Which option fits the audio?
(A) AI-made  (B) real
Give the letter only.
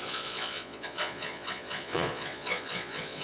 A